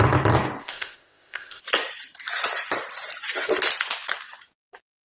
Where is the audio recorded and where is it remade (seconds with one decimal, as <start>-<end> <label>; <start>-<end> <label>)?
0.0-0.6 recorded; 0.6-1.6 remade; 1.6-5.0 recorded